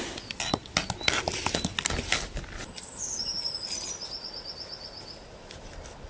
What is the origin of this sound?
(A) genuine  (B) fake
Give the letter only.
A